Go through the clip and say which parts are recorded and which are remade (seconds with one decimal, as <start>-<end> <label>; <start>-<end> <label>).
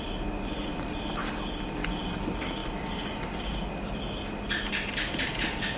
0.0-5.8 recorded